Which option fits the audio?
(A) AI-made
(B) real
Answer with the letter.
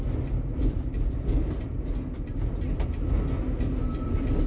B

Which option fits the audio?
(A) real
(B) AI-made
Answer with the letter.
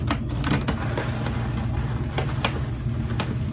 A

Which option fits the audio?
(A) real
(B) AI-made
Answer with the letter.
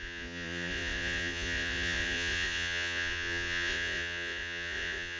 B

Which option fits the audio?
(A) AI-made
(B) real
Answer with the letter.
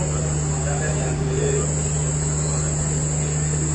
B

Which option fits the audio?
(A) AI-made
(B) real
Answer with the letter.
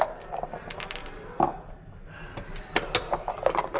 B